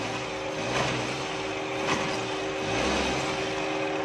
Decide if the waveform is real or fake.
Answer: real